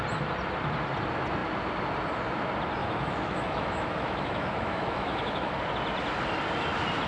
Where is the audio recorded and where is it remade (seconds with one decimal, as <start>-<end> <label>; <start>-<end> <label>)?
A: 0.0-2.8 recorded; 2.8-5.5 remade; 5.5-7.1 recorded